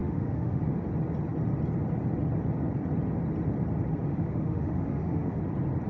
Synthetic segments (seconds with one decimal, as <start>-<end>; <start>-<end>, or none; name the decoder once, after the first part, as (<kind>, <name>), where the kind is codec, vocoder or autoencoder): 0.0-0.6 (autoencoder, DAC-VAE); 4.1-5.4